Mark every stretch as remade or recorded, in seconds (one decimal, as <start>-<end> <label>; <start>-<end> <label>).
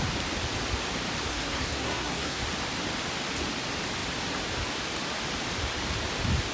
0.0-1.3 recorded; 1.3-2.4 remade; 2.4-6.5 recorded